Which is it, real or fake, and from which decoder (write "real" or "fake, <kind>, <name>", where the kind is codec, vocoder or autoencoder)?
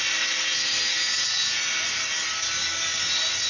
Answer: real